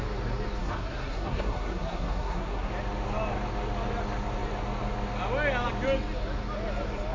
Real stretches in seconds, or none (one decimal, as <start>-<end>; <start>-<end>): 0.0-0.6; 2.7-7.1